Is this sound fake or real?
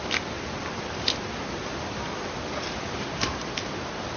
real